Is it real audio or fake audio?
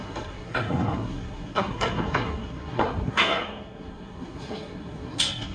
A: fake